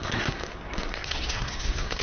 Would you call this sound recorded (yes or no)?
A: no